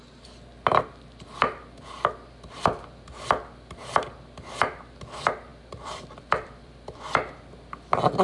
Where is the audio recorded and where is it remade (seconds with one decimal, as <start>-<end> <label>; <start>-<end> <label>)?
0.0-5.5 recorded; 5.5-7.0 remade; 7.0-8.2 recorded